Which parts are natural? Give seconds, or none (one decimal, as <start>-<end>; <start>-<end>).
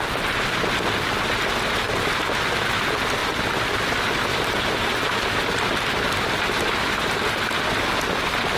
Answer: 0.0-4.3; 7.2-8.6